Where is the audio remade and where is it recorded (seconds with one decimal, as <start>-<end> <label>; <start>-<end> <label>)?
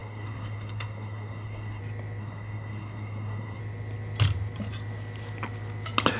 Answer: 0.0-1.8 remade; 1.8-2.2 recorded; 2.2-3.6 remade; 3.6-6.2 recorded